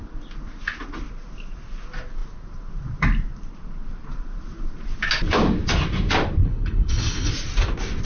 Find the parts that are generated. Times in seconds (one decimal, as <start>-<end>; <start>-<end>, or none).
6.4-7.3